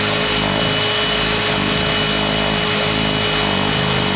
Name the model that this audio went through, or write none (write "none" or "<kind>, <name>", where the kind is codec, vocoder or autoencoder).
none